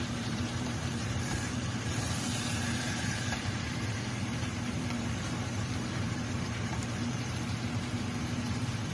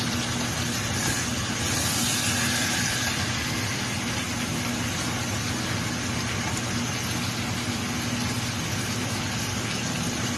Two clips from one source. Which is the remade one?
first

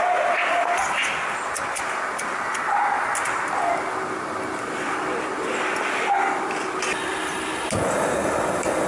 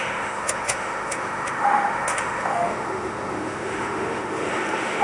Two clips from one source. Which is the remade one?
second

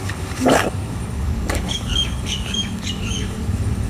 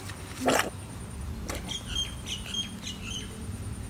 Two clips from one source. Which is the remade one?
first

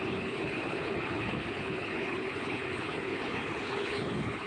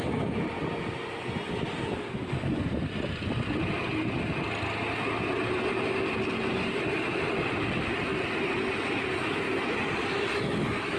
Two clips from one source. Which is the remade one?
first